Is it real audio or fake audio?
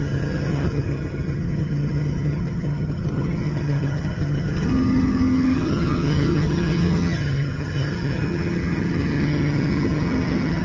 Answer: fake